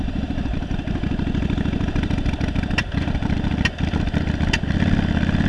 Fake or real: real